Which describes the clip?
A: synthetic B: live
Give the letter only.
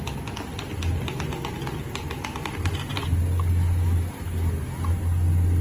B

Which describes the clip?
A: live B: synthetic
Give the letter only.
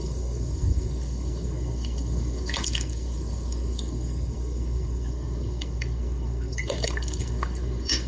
B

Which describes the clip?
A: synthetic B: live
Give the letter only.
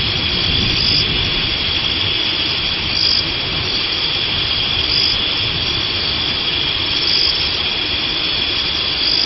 B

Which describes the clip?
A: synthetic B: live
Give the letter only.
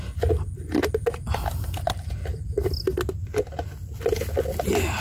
B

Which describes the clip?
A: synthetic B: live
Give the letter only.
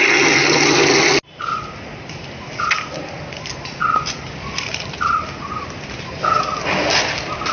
B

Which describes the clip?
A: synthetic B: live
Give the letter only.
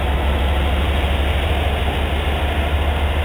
B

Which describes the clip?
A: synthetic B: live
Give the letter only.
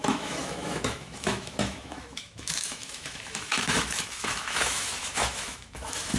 A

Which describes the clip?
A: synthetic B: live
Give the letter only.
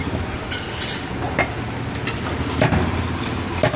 B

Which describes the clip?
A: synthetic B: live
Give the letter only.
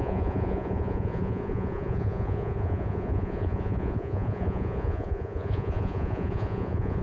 A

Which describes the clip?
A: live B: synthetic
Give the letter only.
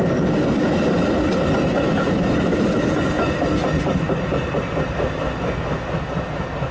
A